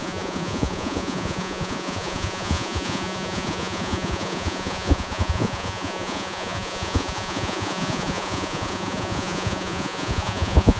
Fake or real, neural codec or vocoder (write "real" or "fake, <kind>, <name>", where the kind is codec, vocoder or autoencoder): fake, vocoder, Vocos